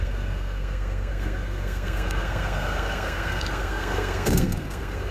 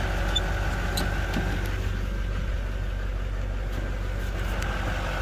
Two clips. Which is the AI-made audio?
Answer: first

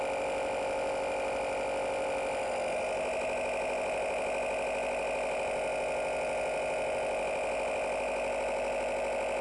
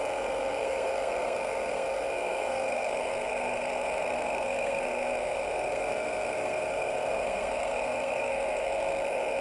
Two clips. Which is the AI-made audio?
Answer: second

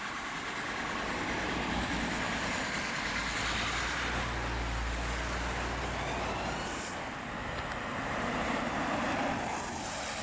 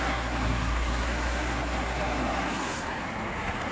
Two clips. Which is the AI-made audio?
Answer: second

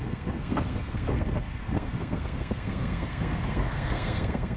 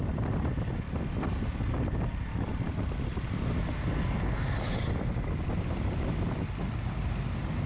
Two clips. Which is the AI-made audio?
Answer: first